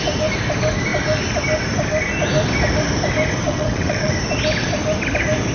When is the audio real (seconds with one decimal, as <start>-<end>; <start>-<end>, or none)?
0.0-3.4; 4.1-5.5